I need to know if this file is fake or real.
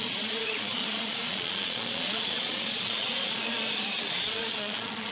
fake